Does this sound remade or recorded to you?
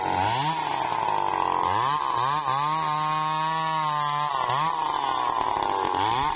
recorded